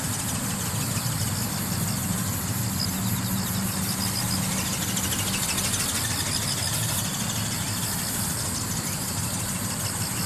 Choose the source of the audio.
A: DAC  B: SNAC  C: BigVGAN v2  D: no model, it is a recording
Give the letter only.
D